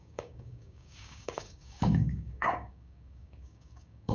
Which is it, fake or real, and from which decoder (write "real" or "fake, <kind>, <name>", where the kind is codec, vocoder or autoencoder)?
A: fake, codec, DAC